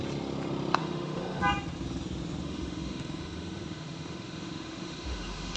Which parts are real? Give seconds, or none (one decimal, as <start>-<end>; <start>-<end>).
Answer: 0.0-0.8; 1.4-2.4